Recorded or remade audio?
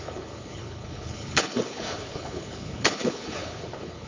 remade